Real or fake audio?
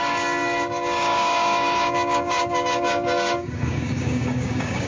fake